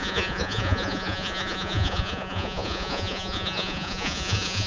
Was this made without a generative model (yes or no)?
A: no